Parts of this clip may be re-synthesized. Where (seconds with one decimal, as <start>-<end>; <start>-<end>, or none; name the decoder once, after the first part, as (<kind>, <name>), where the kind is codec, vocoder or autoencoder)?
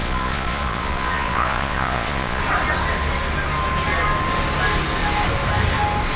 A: 0.0-2.4 (vocoder, Vocos)